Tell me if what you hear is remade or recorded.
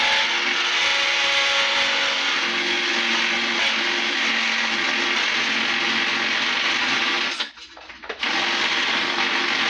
recorded